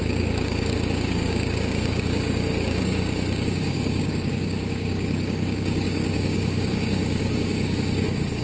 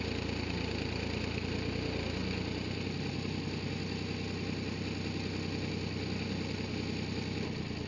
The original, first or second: second